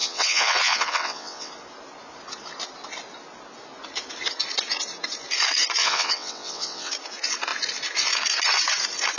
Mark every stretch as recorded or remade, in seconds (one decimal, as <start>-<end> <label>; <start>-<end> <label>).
0.0-1.5 remade; 1.5-5.8 recorded; 5.8-6.9 remade; 6.9-9.2 recorded